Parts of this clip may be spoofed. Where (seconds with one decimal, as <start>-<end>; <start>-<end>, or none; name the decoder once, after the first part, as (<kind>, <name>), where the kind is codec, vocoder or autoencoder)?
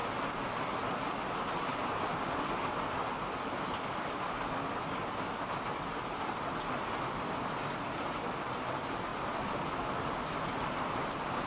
none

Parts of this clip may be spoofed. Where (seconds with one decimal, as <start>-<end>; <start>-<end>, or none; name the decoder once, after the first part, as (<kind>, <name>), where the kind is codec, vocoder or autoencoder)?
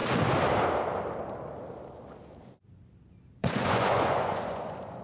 3.4-5.0 (vocoder, Vocos)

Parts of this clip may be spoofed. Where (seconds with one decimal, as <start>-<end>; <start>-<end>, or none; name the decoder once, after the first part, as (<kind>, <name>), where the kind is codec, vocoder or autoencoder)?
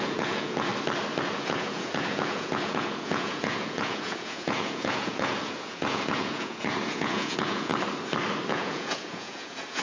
0.0-0.7 (vocoder, Vocos); 1.2-7.7; 8.5-9.8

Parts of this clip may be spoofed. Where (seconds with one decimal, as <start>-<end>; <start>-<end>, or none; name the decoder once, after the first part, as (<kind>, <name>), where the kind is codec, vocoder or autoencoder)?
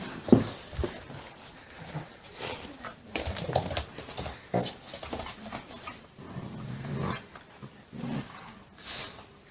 none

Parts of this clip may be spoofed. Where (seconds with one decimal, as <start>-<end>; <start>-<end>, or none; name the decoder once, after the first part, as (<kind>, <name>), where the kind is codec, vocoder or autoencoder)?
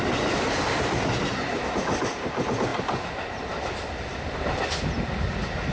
none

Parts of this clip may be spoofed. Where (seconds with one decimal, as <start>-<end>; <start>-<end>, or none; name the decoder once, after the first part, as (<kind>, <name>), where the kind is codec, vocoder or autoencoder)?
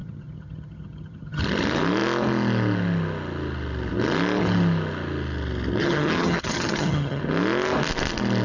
0.0-1.4 (vocoder, HiFi-GAN); 5.8-7.2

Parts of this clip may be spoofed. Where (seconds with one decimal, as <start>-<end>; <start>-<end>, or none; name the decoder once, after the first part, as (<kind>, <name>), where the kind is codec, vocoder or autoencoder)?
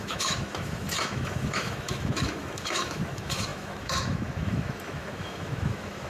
0.0-6.1 (autoencoder, DAC-VAE)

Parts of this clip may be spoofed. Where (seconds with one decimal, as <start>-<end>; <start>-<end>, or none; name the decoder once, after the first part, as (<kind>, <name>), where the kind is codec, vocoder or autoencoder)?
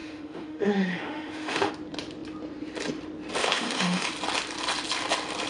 0.0-1.7 (autoencoder, DAC-VAE); 3.4-4.1